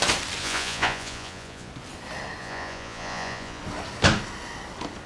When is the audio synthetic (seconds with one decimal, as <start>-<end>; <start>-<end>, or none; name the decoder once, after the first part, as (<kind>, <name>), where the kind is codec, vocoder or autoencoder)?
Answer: 0.4-1.7 (vocoder, Vocos); 2.4-3.6